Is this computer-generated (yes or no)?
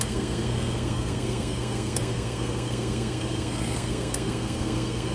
yes